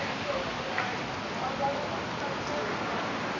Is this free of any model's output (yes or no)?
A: yes